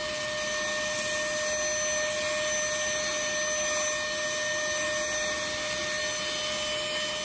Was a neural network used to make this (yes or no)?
no